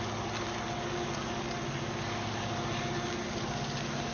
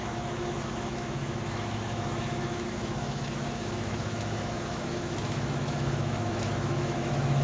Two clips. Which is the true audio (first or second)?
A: first